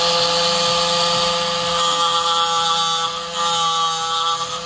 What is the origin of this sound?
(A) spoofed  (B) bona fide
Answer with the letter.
B